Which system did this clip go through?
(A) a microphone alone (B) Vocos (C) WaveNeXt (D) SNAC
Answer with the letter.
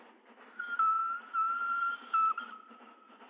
A